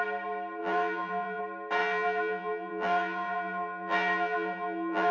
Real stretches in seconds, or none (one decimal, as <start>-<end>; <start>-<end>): 0.0-0.6; 1.4-1.8